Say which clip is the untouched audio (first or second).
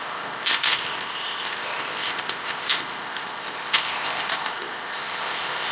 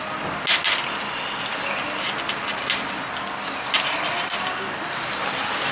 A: second